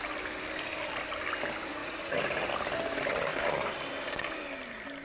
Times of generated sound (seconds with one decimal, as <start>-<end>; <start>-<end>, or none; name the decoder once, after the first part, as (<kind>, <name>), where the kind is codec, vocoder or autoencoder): 1.8-2.5 (vocoder, Vocos)